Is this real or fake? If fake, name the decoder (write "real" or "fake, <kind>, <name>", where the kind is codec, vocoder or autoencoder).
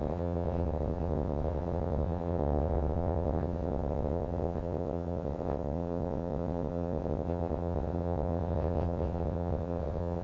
fake, vocoder, WaveNeXt